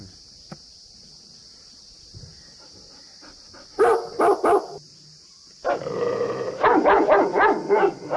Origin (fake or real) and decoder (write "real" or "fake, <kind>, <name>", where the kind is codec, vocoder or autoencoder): real